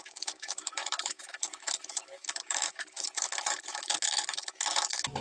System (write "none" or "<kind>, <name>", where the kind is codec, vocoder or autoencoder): autoencoder, DAC-VAE